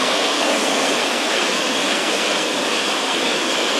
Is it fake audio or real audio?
fake